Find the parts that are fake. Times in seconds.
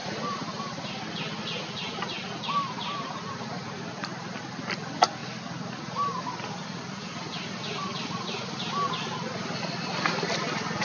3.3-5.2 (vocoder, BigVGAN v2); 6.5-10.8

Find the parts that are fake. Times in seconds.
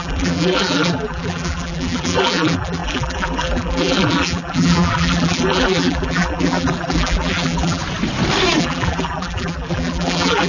0.0-7.8 (vocoder, BigVGAN v2); 8.6-10.5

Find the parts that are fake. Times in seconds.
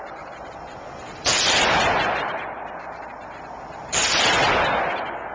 0.0-5.3 (vocoder, BigVGAN v2)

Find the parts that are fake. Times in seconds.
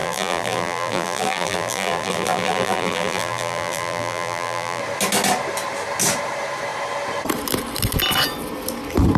0.0-4.8 (vocoder, BigVGAN v2)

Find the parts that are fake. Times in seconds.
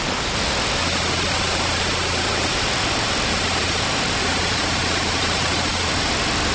0.8-2.5 (vocoder, BigVGAN v2); 3.3-3.8; 4.2-5.9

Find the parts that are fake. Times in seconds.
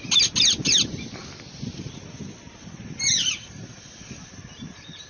1.2-1.9 (vocoder, BigVGAN v2); 3.2-4.6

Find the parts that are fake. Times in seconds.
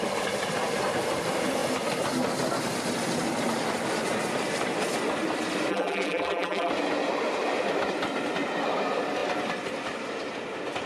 5.7-6.7 (vocoder, BigVGAN v2)